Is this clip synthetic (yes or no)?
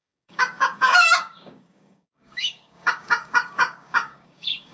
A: yes